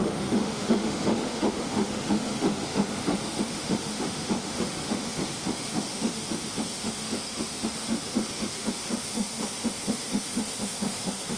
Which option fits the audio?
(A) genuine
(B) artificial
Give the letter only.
B